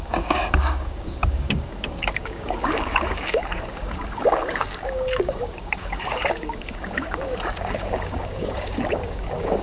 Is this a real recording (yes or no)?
no